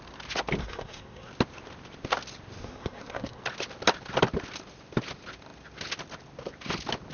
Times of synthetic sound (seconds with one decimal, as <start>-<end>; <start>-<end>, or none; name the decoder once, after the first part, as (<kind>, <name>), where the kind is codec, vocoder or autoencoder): 0.6-1.3 (codec, SNAC); 2.6-3.4